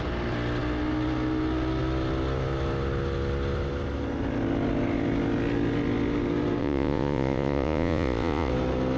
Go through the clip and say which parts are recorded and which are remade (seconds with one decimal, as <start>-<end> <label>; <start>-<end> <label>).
0.0-6.6 recorded; 6.6-8.5 remade; 8.5-9.0 recorded